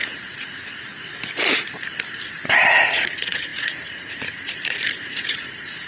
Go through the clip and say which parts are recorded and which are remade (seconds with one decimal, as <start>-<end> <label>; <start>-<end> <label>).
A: 0.0-0.9 remade; 0.9-2.9 recorded; 2.9-5.9 remade